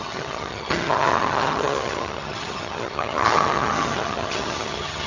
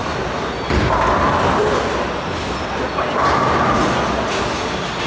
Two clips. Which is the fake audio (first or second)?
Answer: first